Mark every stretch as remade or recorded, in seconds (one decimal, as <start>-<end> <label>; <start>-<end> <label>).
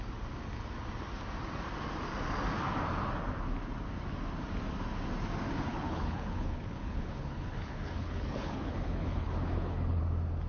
0.0-5.7 recorded; 5.7-10.0 remade; 10.0-10.5 recorded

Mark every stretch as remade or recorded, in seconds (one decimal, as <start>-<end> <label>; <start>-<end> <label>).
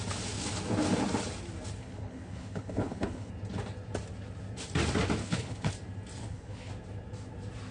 0.0-1.8 recorded; 1.8-3.3 remade; 3.3-5.2 recorded; 5.2-5.7 remade; 5.7-6.2 recorded; 6.2-6.7 remade; 6.7-7.7 recorded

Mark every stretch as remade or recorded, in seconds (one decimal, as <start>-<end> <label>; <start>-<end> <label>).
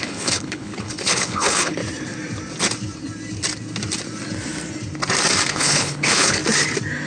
0.0-1.8 remade; 1.8-5.5 recorded; 5.5-6.4 remade; 6.4-7.1 recorded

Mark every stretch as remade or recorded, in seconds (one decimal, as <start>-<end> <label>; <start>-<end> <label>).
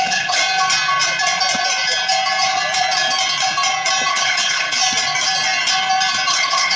0.0-0.4 remade; 0.4-4.1 recorded; 4.1-4.8 remade; 4.8-6.3 recorded; 6.3-6.8 remade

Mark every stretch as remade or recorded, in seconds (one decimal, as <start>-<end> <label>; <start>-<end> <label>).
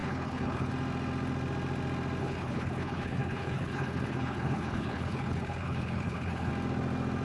0.0-0.7 remade; 0.7-2.2 recorded; 2.2-6.5 remade; 6.5-7.2 recorded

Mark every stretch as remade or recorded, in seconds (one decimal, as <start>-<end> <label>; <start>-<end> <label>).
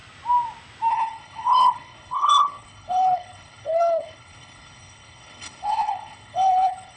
0.0-0.9 recorded; 0.9-7.0 remade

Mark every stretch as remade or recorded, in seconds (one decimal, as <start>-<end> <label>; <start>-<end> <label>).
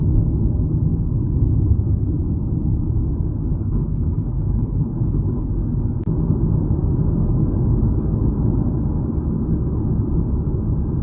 0.0-3.5 recorded; 3.5-5.5 remade; 5.5-11.0 recorded